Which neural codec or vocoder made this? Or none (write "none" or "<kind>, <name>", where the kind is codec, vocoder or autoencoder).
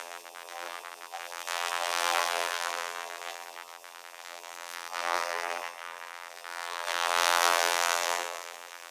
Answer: vocoder, BigVGAN v2